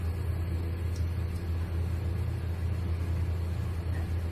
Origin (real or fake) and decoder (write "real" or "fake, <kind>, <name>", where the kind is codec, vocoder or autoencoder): real